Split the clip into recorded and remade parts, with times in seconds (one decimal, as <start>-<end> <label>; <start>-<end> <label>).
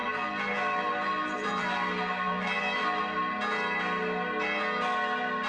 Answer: 0.0-3.0 remade; 3.0-5.5 recorded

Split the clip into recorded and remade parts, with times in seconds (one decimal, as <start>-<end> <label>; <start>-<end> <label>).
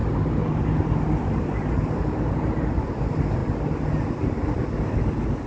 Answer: 0.0-2.9 remade; 2.9-5.5 recorded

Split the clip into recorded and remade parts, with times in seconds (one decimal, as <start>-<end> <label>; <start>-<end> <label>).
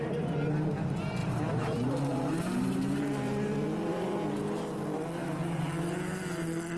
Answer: 0.0-1.2 recorded; 1.2-2.6 remade; 2.6-6.8 recorded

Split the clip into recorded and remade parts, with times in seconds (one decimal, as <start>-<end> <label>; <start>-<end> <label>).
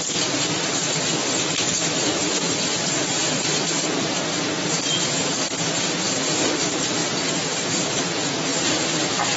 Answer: 0.0-2.2 recorded; 2.2-5.1 remade; 5.1-9.4 recorded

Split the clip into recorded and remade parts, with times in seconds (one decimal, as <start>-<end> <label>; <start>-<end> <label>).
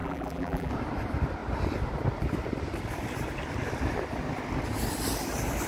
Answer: 0.0-0.7 remade; 0.7-5.7 recorded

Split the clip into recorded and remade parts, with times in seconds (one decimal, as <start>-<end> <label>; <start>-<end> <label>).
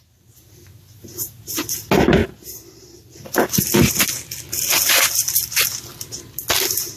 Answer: 0.0-7.0 recorded